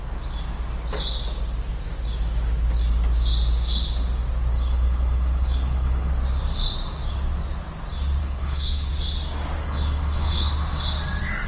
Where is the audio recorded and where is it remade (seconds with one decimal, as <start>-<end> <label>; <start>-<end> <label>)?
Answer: 0.0-4.5 recorded; 4.5-6.1 remade; 6.1-8.2 recorded; 8.2-8.9 remade; 8.9-9.6 recorded; 9.6-10.5 remade; 10.5-11.5 recorded